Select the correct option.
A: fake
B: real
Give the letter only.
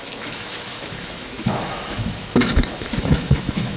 A